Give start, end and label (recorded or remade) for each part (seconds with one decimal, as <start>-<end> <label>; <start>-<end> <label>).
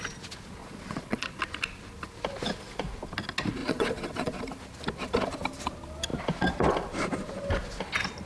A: 0.0-0.6 recorded; 0.6-1.4 remade; 1.4-3.6 recorded; 3.6-4.4 remade; 4.4-8.3 recorded